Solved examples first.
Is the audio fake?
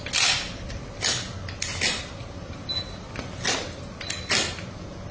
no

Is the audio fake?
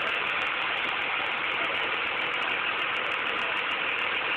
yes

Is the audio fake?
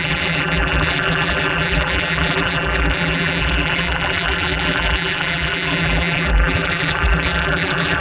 yes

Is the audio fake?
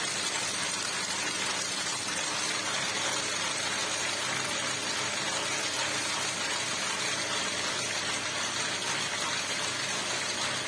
yes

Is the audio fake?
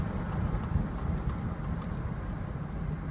no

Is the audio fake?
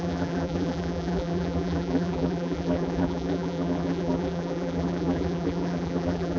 yes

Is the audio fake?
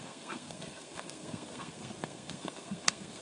yes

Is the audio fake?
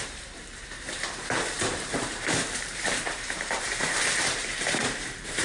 yes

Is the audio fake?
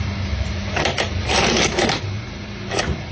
yes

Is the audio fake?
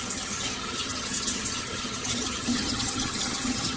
yes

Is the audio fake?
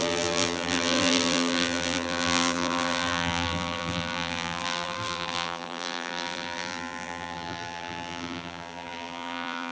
yes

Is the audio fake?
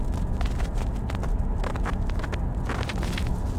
no